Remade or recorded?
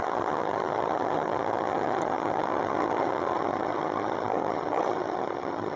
remade